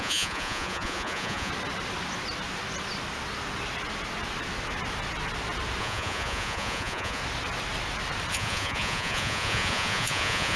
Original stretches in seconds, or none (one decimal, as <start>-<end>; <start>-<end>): 1.5-5.8; 7.2-8.3